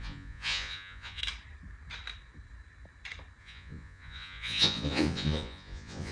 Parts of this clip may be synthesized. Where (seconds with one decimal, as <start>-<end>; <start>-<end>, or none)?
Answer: 0.0-1.2; 3.4-6.1